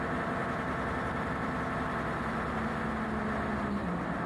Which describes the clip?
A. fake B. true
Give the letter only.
B